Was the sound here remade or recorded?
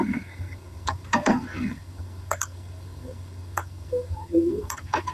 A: remade